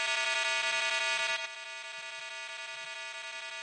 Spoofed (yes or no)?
no